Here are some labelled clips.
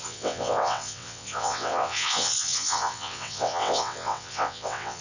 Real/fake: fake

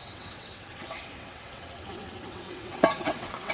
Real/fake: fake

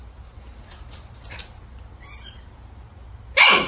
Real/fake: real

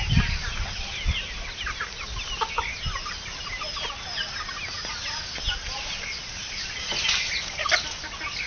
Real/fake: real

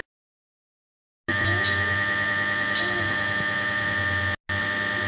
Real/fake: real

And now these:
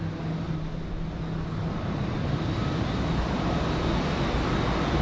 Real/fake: real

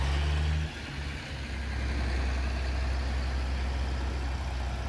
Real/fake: real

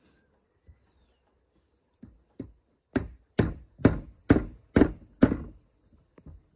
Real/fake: real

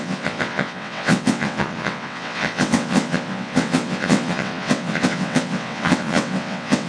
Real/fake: fake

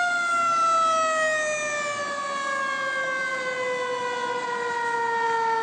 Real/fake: real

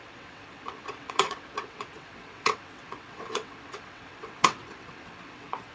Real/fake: fake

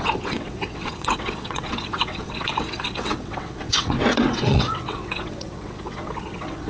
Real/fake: fake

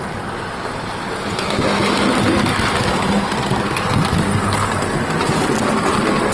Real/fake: real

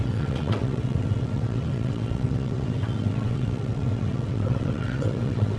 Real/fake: fake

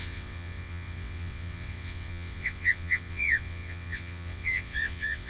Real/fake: fake